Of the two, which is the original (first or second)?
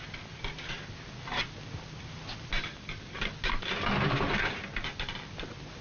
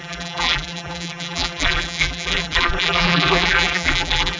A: first